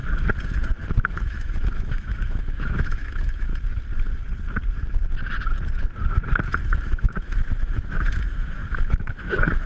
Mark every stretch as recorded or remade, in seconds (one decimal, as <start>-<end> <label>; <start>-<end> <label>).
0.0-1.1 recorded; 1.1-3.5 remade; 3.5-7.0 recorded; 7.0-9.7 remade